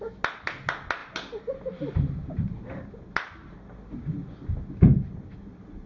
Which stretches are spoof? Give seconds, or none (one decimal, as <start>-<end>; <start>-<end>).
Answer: none